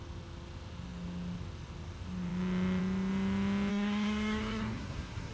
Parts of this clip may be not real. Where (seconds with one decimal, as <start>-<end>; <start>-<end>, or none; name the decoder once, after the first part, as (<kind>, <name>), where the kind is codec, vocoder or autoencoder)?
3.7-5.3 (codec, SNAC)